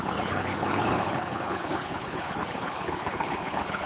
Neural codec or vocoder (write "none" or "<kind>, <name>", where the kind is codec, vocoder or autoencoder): codec, HILCodec